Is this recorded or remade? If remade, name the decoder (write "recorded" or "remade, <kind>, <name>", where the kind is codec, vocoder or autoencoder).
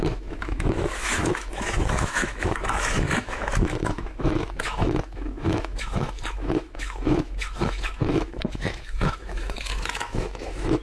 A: remade, autoencoder, DAC-VAE